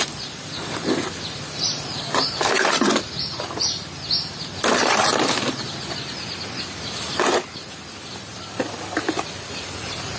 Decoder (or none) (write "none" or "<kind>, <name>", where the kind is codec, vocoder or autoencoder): none